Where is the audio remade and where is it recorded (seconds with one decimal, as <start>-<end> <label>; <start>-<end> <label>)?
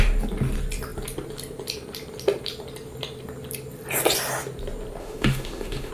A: 0.0-5.0 recorded; 5.0-5.9 remade